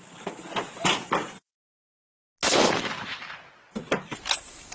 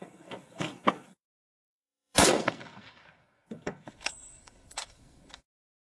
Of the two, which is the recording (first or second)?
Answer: first